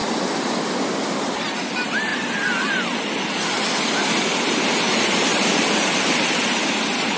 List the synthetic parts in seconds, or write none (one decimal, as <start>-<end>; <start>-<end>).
0.0-0.6; 5.3-6.1